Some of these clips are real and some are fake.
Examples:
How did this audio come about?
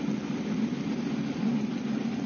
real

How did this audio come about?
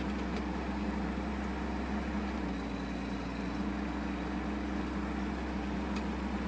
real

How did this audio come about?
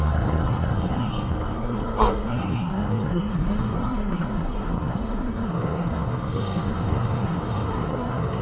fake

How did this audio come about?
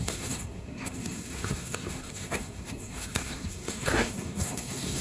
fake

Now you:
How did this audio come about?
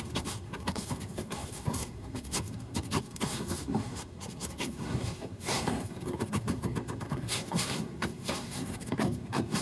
fake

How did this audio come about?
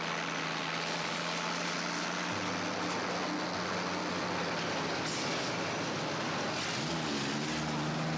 real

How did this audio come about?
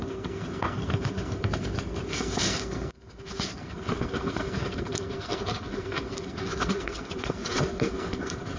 fake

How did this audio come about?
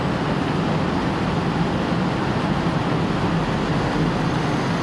real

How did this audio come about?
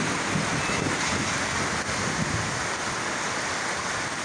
real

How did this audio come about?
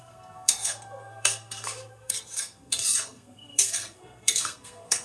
fake